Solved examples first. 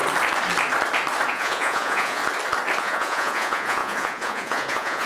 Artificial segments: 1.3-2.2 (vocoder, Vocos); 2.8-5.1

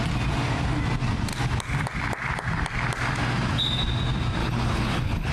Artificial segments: 4.4-5.3 (codec, HILCodec)

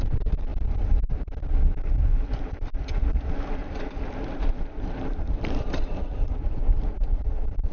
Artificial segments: 0.0-0.5 (vocoder, BigVGAN v2); 5.1-7.7

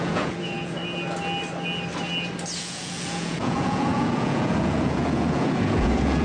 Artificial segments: 0.0-0.8 (vocoder, Vocos); 2.6-6.2

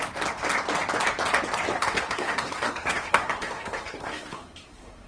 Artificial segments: 1.7-5.1 (codec, SNAC)

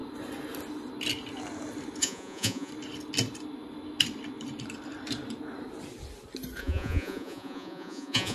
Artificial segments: 2.0-2.7 (vocoder, Vocos); 6.6-8.3

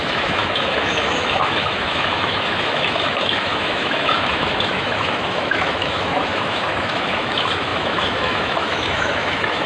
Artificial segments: 0.0-9.7 (autoencoder, DAC-VAE)